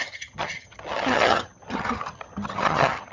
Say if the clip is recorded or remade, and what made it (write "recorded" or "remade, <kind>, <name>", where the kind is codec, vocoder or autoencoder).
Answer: remade, vocoder, HiFi-GAN